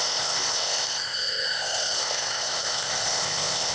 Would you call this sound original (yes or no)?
no